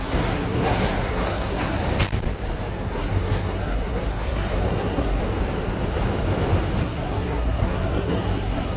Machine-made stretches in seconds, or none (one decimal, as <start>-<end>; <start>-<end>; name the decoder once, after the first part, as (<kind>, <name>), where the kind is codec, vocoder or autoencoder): 0.0-1.8 (codec, SNAC); 2.7-5.2; 6.8-8.8